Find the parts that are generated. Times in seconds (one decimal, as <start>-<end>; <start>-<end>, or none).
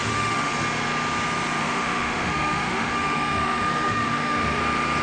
0.0-0.5; 1.6-4.6